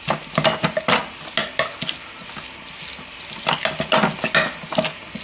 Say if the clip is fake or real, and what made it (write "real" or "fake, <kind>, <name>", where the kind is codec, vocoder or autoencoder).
real